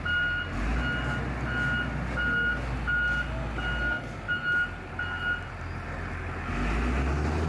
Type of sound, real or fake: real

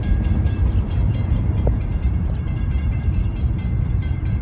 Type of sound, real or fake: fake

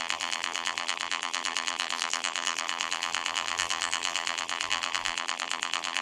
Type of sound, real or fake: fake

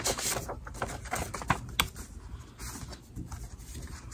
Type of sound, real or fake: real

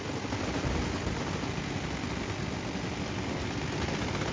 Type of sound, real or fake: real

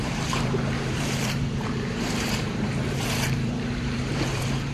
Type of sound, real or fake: fake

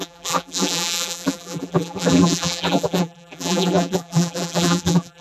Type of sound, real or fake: fake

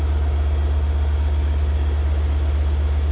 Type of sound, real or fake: real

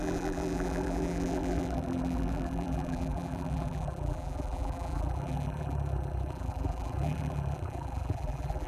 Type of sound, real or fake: fake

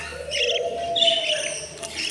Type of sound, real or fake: real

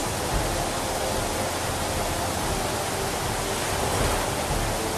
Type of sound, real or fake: real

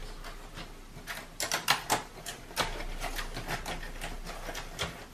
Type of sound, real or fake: real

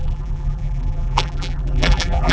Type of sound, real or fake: fake